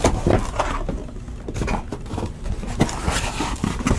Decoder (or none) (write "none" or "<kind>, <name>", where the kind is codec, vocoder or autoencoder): none